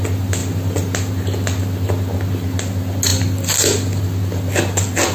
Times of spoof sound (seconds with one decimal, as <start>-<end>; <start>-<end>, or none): none